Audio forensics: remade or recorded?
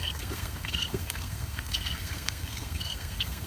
remade